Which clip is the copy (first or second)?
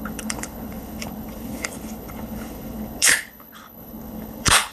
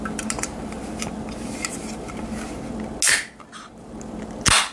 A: first